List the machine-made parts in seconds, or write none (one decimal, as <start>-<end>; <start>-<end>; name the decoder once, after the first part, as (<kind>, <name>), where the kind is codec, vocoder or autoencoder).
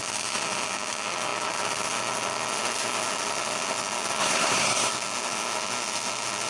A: 4.2-4.9 (codec, SNAC)